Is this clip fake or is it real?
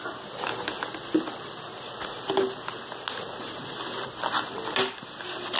real